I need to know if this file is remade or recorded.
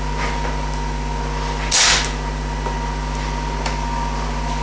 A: recorded